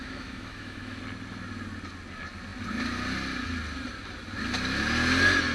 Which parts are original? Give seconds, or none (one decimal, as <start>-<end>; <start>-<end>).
1.0-5.5